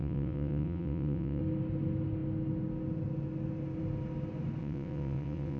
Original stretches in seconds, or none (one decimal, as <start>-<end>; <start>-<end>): 1.4-4.6